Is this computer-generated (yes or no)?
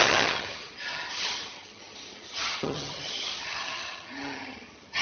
yes